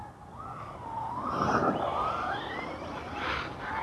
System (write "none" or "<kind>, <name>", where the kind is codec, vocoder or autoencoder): none